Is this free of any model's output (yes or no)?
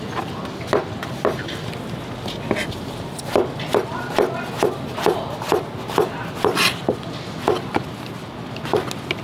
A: yes